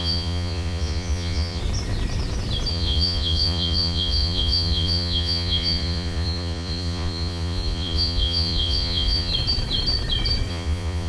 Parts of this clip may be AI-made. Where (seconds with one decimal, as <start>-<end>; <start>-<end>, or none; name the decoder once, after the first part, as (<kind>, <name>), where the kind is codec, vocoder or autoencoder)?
0.0-1.6 (vocoder, Vocos); 2.7-9.3; 10.5-11.1